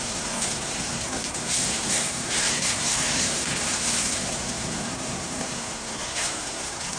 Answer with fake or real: fake